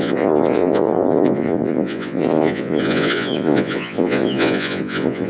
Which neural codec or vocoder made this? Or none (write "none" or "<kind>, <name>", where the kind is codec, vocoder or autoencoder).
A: vocoder, Vocos